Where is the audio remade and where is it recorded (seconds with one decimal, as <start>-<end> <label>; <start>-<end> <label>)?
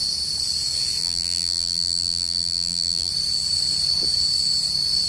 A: 0.0-1.0 recorded; 1.0-3.1 remade; 3.1-5.1 recorded